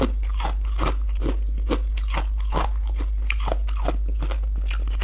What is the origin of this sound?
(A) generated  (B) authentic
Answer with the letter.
B